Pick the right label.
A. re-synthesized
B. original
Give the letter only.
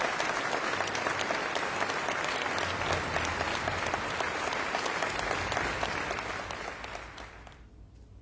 B